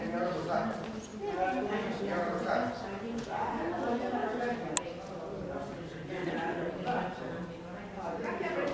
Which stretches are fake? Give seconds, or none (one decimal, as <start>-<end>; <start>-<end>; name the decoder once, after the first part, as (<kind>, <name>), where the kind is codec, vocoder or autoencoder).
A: 6.2-6.7 (vocoder, WaveNeXt)